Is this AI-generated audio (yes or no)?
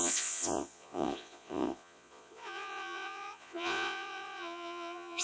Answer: yes